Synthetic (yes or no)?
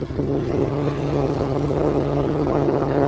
yes